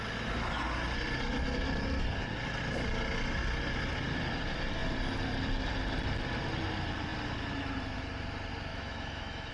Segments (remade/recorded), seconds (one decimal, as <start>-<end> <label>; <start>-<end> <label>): 0.0-8.7 recorded; 8.7-9.5 remade